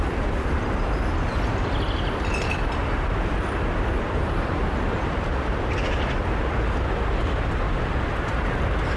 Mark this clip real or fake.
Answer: fake